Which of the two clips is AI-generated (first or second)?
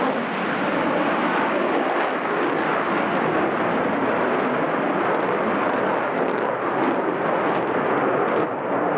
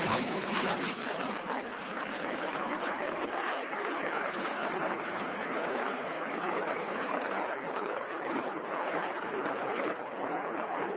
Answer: second